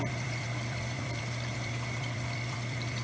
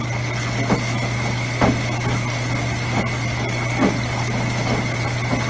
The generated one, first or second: first